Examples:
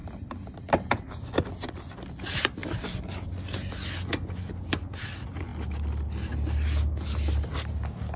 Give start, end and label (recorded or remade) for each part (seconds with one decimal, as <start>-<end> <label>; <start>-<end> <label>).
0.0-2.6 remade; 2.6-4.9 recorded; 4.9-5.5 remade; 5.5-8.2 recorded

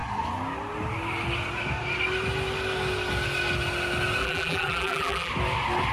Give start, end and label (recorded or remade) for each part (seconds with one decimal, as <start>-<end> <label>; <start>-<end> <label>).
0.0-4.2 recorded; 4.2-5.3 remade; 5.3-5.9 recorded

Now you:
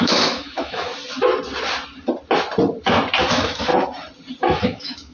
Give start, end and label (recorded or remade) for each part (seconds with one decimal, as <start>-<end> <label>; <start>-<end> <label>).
0.0-0.9 remade; 0.9-3.3 recorded; 3.3-3.7 remade; 3.7-4.4 recorded; 4.4-5.1 remade

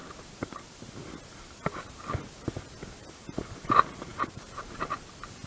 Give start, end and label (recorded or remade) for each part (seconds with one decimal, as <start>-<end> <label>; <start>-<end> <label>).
0.0-0.9 remade; 0.9-3.0 recorded; 3.0-3.6 remade; 3.6-4.1 recorded; 4.1-4.9 remade; 4.9-5.5 recorded

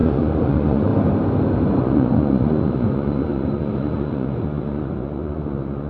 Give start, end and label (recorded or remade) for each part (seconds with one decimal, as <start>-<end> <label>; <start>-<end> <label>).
0.0-0.9 remade; 0.9-1.8 recorded; 1.8-5.9 remade

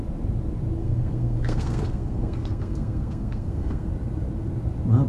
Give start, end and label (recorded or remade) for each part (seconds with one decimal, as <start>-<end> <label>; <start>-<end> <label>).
0.0-0.8 recorded; 0.8-3.9 remade; 3.9-5.1 recorded